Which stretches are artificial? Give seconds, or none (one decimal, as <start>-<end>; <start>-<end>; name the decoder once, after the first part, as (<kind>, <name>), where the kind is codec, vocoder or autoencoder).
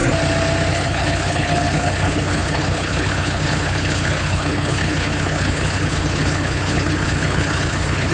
0.7-8.1 (codec, HILCodec)